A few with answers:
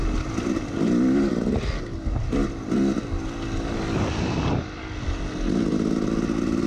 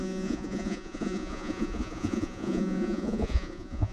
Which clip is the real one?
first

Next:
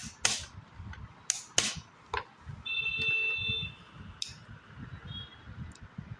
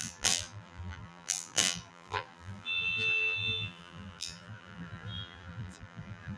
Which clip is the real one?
first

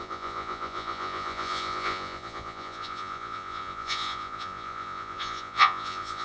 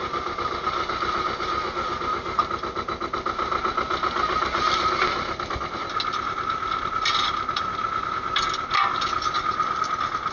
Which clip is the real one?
second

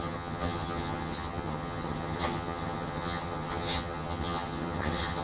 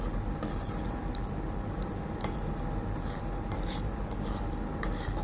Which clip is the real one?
second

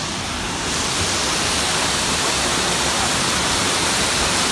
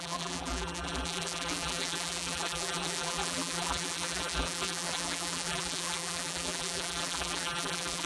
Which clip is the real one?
first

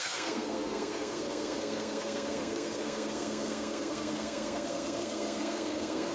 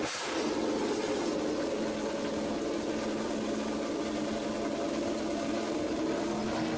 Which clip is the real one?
second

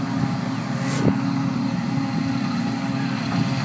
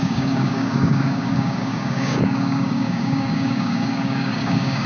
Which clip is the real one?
first